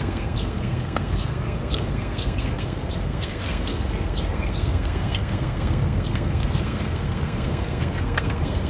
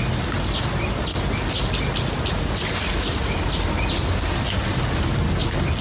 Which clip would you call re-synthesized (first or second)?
first